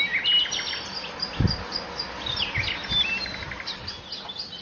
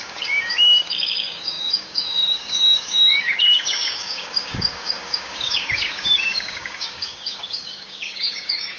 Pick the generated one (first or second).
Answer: second